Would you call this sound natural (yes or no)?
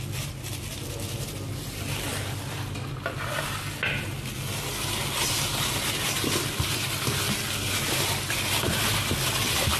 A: yes